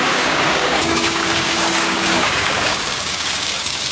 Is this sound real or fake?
fake